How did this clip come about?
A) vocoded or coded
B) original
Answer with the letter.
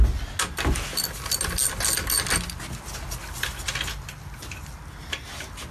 B